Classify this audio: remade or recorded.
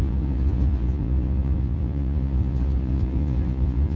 remade